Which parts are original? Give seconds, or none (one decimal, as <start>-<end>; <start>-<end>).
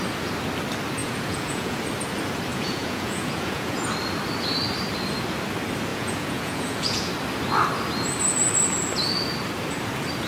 0.0-1.0; 1.8-2.5; 3.9-5.9; 7.1-10.3